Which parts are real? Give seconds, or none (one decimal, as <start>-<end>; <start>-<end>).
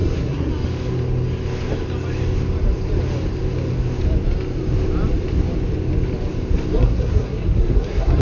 0.5-6.8